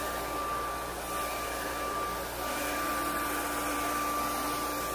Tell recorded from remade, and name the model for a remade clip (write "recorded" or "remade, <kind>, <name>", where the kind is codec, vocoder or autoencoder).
recorded